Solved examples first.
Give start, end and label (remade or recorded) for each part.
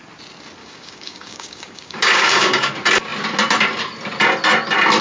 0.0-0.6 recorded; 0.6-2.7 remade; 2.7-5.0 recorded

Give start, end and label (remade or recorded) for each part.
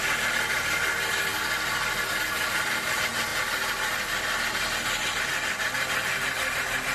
0.0-6.9 recorded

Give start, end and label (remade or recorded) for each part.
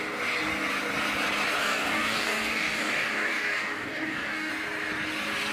0.0-1.6 recorded; 1.6-4.5 remade; 4.5-5.5 recorded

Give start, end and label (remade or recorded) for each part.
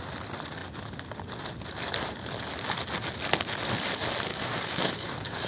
0.0-4.3 recorded; 4.3-5.5 remade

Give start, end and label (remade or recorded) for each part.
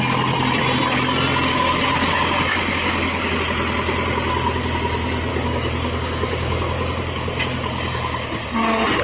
0.0-2.0 recorded; 2.0-3.4 remade; 3.4-5.3 recorded; 5.3-8.5 remade; 8.5-9.0 recorded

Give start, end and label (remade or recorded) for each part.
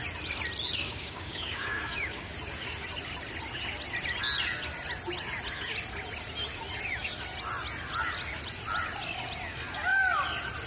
0.0-0.8 recorded; 0.8-2.3 remade; 2.3-10.7 recorded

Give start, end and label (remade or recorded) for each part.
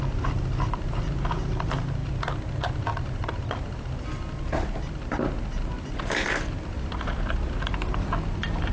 0.0-8.7 recorded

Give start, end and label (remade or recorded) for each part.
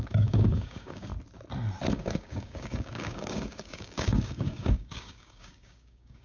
0.0-1.1 remade; 1.1-1.9 recorded; 1.9-6.2 remade